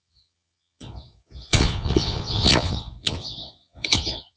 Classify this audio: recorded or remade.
remade